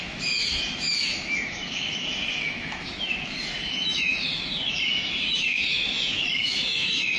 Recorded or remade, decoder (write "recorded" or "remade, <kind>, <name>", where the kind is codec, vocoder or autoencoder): remade, autoencoder, DAC-VAE